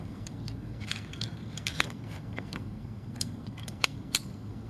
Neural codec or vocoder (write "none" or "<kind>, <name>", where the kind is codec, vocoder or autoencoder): codec, SNAC